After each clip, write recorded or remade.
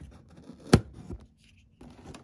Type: recorded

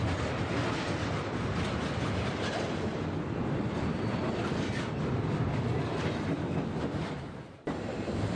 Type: recorded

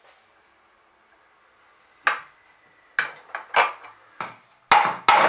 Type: recorded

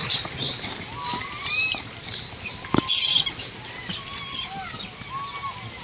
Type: recorded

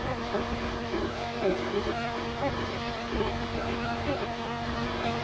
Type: remade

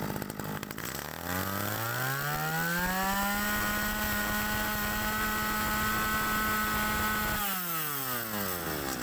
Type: recorded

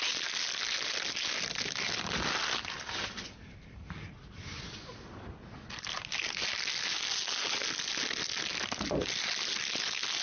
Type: recorded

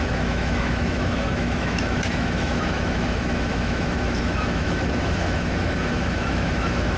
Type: remade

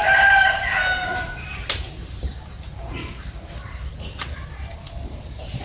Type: remade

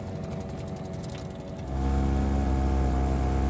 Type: recorded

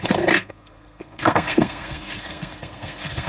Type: remade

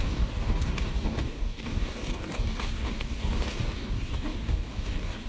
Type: remade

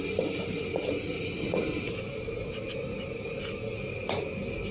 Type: recorded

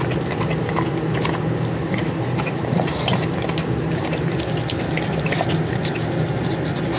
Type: recorded